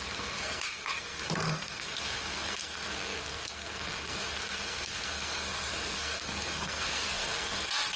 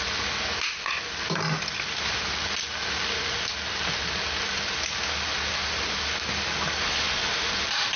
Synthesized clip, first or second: first